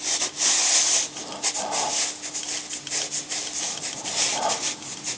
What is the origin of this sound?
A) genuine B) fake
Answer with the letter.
A